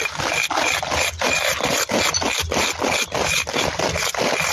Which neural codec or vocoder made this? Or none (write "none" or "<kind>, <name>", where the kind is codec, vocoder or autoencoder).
none